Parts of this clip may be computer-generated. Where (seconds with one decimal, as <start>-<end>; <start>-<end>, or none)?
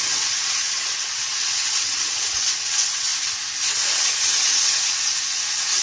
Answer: 0.0-3.1; 3.7-5.8